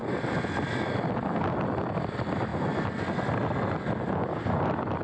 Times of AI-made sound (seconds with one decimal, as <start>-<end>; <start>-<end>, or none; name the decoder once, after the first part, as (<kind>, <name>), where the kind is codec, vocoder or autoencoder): none